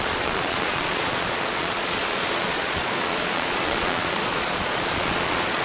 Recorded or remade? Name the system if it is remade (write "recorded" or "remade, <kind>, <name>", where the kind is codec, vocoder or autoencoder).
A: remade, vocoder, Vocos